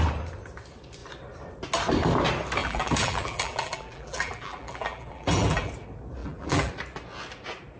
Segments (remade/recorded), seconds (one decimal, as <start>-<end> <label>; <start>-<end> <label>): 0.0-2.6 recorded; 2.6-5.7 remade; 5.7-6.2 recorded; 6.2-6.7 remade; 6.7-7.8 recorded